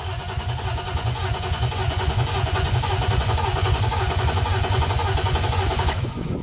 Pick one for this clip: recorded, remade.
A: remade